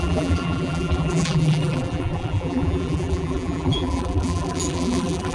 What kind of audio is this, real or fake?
fake